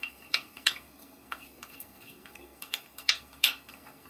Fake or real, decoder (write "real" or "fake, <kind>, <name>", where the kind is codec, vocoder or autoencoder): fake, codec, SNAC